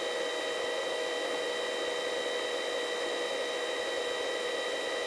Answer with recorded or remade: recorded